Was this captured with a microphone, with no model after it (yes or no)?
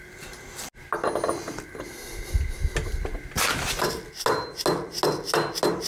yes